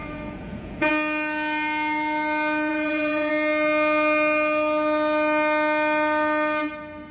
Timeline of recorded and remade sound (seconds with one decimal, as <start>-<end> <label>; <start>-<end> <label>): 0.0-0.9 remade; 0.9-2.7 recorded; 2.7-3.3 remade; 3.3-7.1 recorded